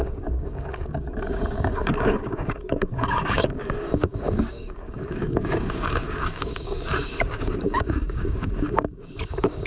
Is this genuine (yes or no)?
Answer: no